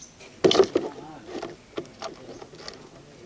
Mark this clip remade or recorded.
recorded